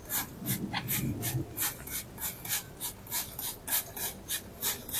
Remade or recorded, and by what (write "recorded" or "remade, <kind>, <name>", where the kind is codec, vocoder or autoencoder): recorded